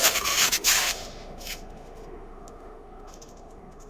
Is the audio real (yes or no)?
no